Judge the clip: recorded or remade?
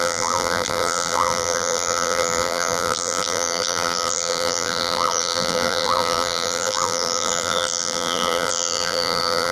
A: remade